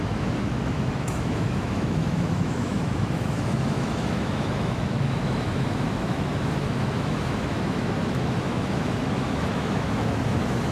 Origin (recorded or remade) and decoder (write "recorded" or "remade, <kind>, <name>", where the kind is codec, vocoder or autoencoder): remade, autoencoder, DAC-VAE